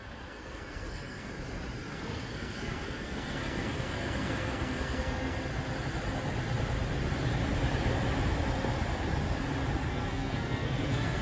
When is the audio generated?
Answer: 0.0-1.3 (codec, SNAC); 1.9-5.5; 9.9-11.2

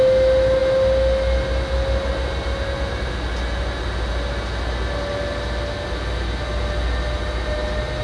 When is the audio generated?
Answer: none

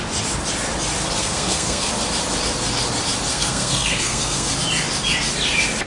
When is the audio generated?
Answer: 1.2-1.9 (codec, SNAC); 3.3-4.5

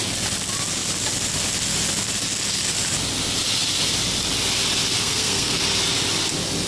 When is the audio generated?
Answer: 5.0-5.6 (codec, SNAC)